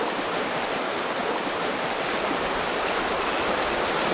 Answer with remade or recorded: recorded